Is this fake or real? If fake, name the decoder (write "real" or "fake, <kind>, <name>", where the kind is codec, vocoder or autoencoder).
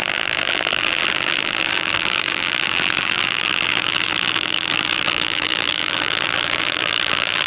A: fake, vocoder, BigVGAN v2